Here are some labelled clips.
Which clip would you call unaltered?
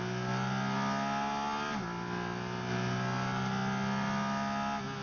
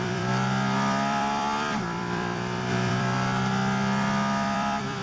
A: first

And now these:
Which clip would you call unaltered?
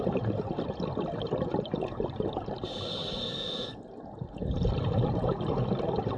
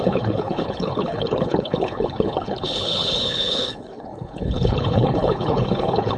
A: first